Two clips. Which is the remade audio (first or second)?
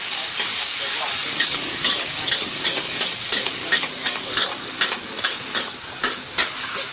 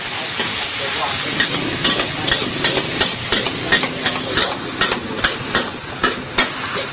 first